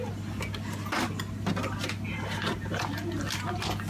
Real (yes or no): yes